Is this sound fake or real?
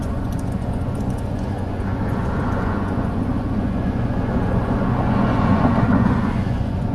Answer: fake